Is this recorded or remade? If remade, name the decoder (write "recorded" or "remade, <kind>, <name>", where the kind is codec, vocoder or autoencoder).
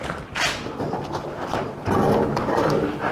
recorded